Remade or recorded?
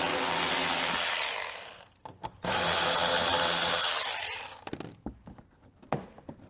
recorded